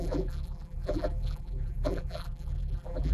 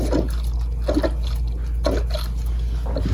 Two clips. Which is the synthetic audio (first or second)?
first